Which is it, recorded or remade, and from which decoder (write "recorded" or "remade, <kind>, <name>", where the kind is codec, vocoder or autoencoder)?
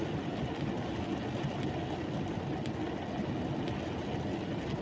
recorded